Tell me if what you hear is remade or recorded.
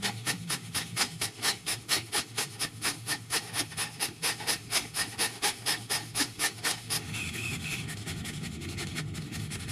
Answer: remade